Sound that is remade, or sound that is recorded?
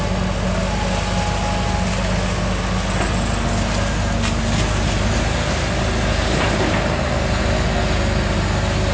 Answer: recorded